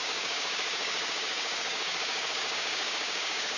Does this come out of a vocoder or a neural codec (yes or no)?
yes